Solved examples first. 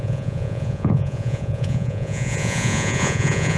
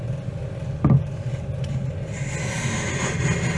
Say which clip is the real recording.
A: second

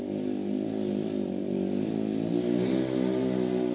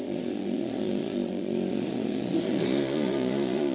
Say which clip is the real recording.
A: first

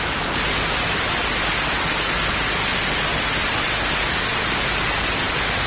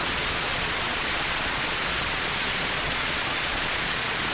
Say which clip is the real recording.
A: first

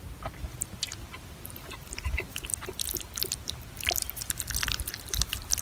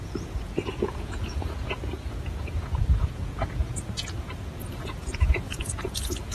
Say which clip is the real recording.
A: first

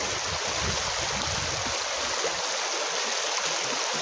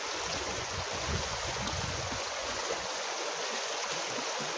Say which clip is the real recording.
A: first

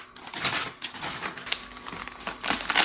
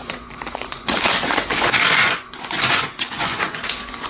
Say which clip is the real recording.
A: first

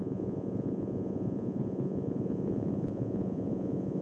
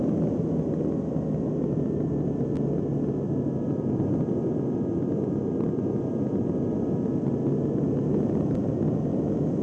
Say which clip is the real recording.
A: second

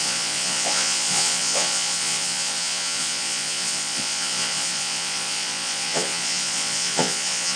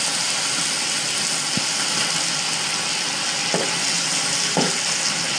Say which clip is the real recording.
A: second